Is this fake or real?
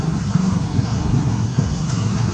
fake